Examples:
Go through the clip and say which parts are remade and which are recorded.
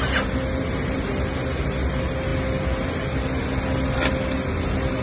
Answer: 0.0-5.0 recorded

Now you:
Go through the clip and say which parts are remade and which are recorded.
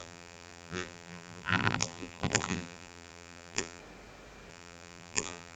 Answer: 0.0-3.8 remade; 3.8-4.5 recorded; 4.5-5.6 remade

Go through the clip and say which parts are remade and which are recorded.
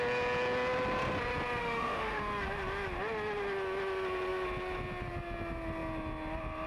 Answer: 0.0-1.6 recorded; 1.6-2.2 remade; 2.2-6.7 recorded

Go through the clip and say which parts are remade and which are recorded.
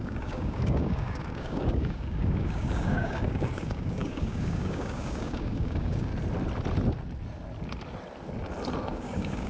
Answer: 0.0-6.1 remade; 6.1-8.9 recorded; 8.9-9.5 remade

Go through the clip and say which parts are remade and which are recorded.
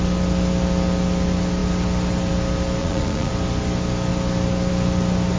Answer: 0.0-2.8 recorded; 2.8-3.3 remade; 3.3-5.4 recorded